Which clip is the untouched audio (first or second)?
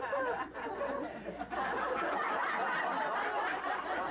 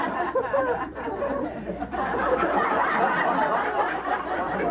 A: first